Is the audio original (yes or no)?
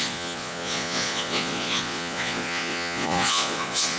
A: no